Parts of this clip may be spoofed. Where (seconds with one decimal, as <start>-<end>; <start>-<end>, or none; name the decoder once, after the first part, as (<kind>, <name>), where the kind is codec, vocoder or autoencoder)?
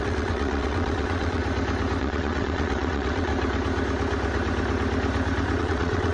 0.0-1.4 (vocoder, WaveNeXt); 2.0-3.3; 5.6-6.1